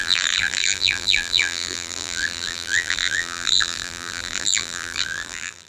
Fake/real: fake